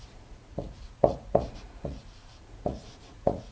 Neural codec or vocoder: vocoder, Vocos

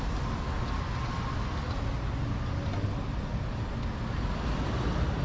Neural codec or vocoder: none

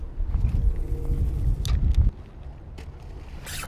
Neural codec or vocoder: none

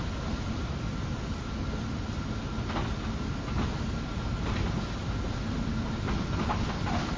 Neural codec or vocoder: none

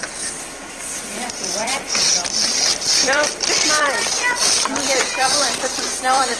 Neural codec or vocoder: vocoder, BigVGAN v2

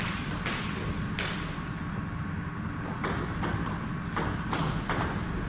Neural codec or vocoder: none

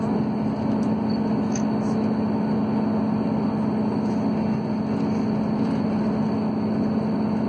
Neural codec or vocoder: none